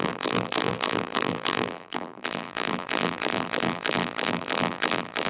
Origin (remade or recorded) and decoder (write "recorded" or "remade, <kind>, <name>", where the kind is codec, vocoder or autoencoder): remade, vocoder, BigVGAN v2